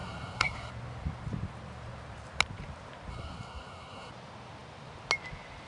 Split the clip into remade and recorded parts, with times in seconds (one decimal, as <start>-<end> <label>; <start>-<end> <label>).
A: 0.0-0.7 remade; 0.7-3.1 recorded; 3.1-4.1 remade; 4.1-5.7 recorded

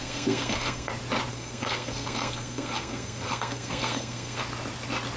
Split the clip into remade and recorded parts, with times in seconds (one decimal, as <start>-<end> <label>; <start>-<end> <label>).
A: 0.0-0.9 remade; 0.9-1.3 recorded; 1.3-4.4 remade; 4.4-5.2 recorded

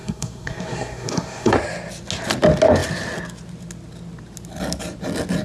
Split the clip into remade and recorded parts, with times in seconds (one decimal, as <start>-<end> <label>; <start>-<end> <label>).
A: 0.0-1.5 remade; 1.5-5.4 recorded

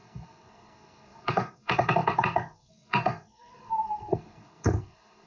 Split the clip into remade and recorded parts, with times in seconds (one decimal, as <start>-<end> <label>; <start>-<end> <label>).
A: 0.0-5.3 remade

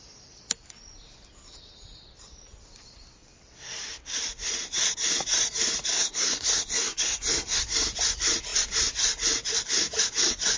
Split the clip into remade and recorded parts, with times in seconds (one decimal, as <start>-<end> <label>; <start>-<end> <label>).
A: 0.0-5.9 recorded; 5.9-7.6 remade; 7.6-10.6 recorded

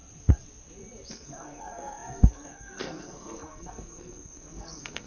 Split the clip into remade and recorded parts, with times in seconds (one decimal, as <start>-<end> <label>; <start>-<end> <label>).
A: 0.0-1.1 recorded; 1.1-5.1 remade